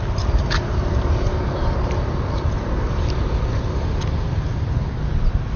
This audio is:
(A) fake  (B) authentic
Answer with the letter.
B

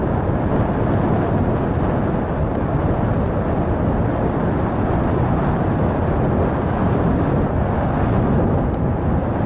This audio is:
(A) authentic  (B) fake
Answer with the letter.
A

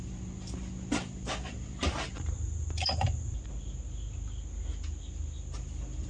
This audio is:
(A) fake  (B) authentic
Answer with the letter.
B